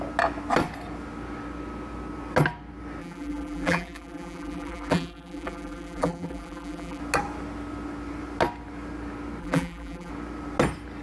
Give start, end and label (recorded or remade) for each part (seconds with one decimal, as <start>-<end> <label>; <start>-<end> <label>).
0.0-3.0 recorded; 3.0-7.0 remade; 7.0-9.4 recorded; 9.4-10.1 remade; 10.1-11.0 recorded